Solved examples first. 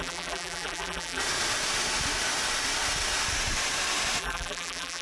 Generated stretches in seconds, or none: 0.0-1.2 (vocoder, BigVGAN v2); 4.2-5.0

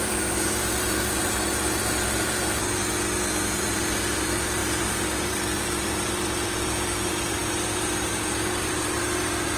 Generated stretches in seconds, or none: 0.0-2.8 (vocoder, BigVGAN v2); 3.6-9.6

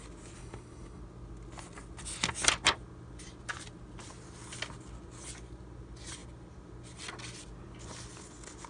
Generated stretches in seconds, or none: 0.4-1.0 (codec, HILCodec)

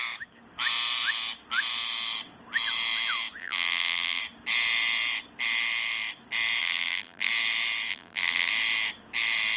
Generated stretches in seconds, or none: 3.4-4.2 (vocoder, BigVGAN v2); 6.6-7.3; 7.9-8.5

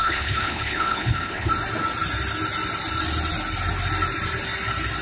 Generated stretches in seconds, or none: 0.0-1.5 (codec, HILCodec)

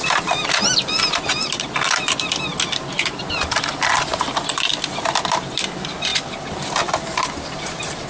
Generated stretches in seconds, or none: 0.0-8.1 (vocoder, BigVGAN v2)